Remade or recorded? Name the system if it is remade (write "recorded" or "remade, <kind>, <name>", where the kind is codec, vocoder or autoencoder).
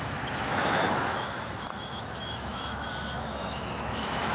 remade, autoencoder, DAC-VAE